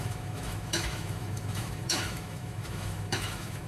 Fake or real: fake